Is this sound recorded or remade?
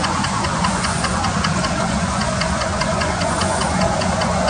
remade